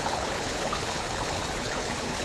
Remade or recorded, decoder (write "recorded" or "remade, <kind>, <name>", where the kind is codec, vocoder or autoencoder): remade, codec, HILCodec